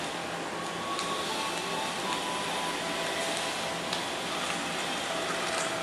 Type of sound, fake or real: real